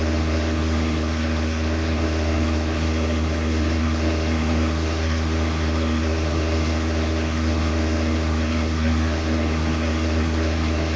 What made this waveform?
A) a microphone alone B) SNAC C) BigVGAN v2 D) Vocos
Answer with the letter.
B